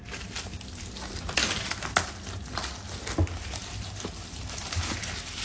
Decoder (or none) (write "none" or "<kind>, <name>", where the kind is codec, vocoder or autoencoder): none